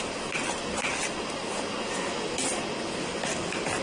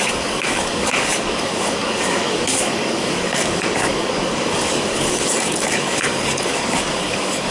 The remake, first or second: second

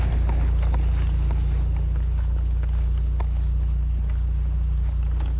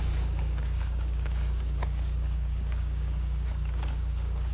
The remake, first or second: second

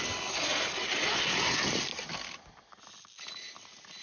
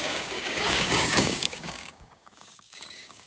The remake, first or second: second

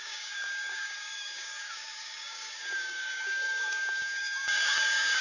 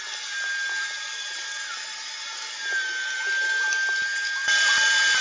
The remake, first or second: first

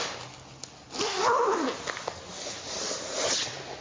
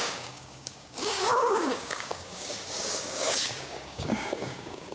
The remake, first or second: second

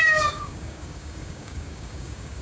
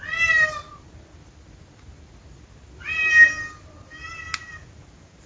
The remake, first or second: first